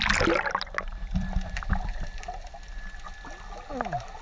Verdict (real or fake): real